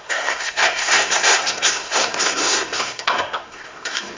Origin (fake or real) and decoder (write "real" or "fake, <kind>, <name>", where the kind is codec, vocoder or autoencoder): fake, codec, SNAC